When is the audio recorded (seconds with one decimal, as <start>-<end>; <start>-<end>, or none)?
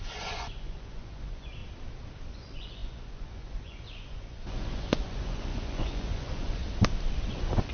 1.6-2.3; 6.6-7.3